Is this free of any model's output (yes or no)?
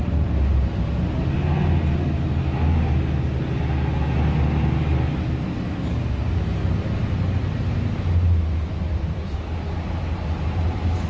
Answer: yes